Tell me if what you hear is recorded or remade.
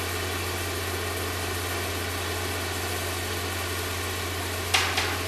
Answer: recorded